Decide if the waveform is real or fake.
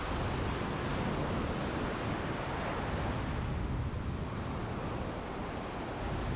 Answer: real